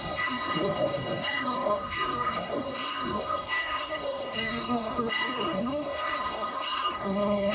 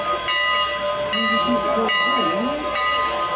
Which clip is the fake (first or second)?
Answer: first